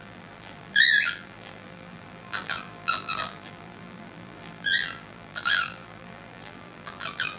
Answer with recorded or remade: remade